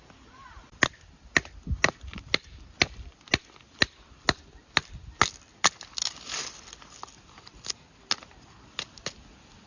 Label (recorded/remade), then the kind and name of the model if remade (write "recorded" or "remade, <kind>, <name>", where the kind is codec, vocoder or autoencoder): recorded